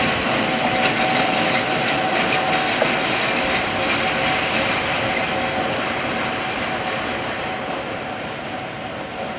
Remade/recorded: recorded